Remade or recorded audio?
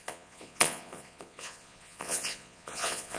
remade